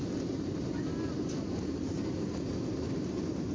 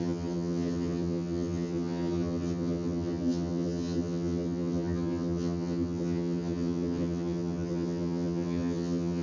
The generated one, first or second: second